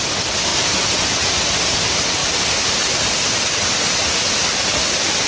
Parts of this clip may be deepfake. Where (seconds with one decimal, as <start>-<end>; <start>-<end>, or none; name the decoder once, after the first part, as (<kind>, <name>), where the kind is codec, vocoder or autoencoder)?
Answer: 0.0-0.5 (vocoder, BigVGAN v2); 1.8-5.3